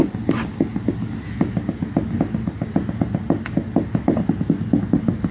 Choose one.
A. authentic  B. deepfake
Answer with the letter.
A